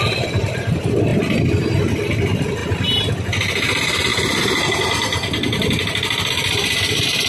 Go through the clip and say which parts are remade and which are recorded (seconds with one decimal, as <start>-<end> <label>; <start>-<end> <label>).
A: 0.0-7.3 recorded